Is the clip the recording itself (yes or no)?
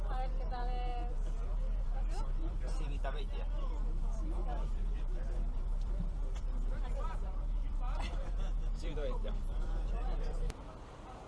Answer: no